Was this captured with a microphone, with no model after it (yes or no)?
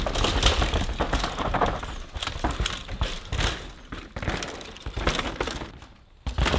yes